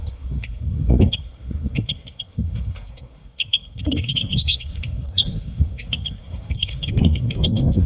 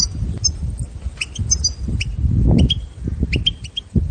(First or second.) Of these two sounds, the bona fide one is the second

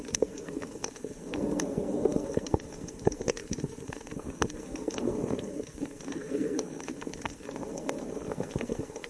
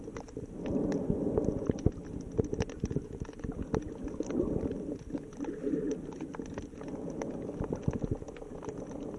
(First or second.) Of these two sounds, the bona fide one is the second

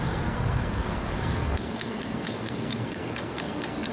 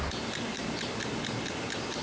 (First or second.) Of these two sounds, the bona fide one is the second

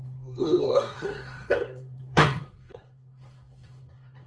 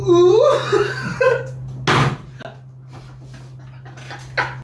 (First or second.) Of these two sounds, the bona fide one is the second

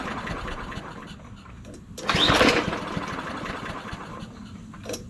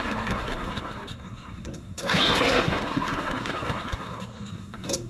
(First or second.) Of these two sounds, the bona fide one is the first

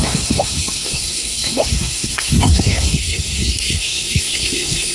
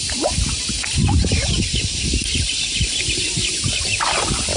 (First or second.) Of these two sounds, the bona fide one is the second